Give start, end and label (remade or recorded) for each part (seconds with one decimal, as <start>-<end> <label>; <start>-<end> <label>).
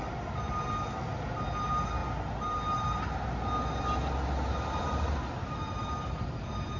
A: 0.0-6.8 recorded